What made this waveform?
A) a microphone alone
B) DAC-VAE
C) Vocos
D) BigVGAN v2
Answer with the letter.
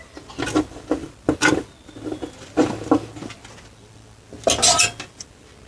A